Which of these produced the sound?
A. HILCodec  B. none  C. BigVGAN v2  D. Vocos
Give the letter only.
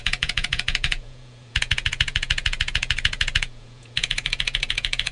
D